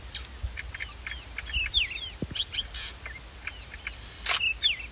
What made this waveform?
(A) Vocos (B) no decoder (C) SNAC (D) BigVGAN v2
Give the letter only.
B